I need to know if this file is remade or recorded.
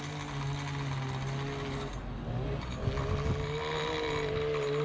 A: recorded